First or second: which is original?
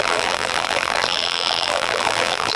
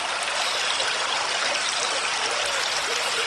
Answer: second